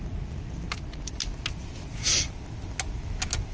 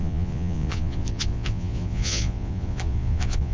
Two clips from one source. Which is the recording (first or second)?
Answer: first